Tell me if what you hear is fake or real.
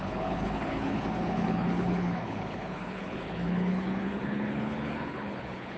fake